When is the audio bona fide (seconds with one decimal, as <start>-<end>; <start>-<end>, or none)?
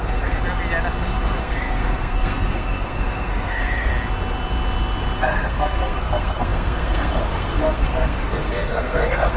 0.4-1.4; 3.9-5.2